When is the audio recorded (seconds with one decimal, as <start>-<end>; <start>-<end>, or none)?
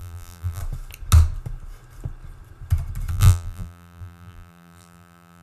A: 0.6-3.1